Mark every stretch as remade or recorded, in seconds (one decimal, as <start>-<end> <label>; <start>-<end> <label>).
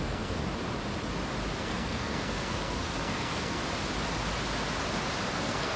0.0-0.4 remade; 0.4-1.6 recorded; 1.6-3.6 remade; 3.6-5.3 recorded; 5.3-5.8 remade